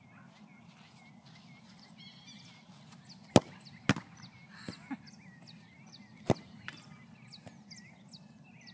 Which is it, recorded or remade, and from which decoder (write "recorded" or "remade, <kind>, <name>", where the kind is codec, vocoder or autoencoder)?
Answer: recorded